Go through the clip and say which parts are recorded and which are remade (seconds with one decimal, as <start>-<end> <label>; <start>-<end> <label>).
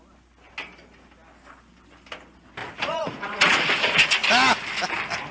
0.0-2.6 recorded; 2.6-3.6 remade; 3.6-5.3 recorded